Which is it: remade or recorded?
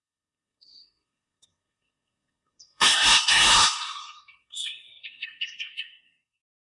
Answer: remade